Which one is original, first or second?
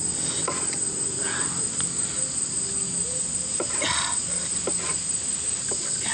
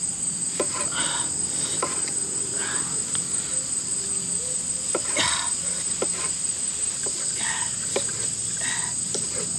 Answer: first